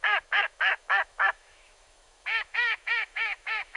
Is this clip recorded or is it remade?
remade